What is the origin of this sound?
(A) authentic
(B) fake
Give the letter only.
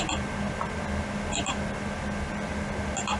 A